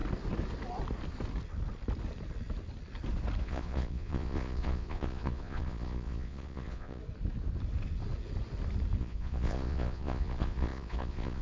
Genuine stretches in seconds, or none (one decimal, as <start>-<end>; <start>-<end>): 0.0-3.4; 7.0-9.0